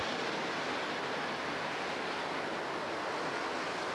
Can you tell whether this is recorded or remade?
recorded